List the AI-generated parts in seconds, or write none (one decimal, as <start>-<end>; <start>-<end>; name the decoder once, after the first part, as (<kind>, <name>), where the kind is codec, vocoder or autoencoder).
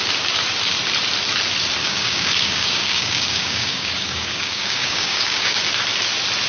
1.8-5.7 (codec, DAC)